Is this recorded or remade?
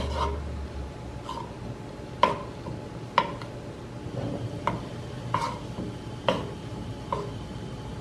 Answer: recorded